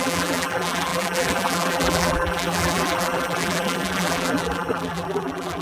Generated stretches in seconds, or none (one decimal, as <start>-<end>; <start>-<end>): 0.0-5.6